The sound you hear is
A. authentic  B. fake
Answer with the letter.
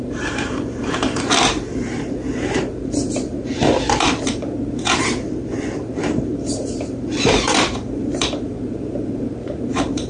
B